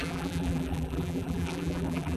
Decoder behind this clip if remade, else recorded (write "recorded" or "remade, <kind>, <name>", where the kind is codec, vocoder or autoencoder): remade, vocoder, BigVGAN v2